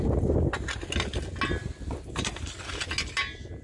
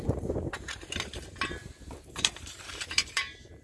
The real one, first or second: first